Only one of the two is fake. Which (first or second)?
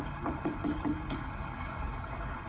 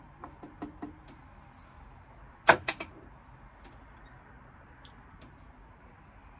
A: first